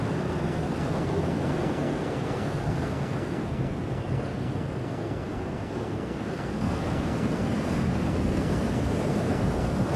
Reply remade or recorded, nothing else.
remade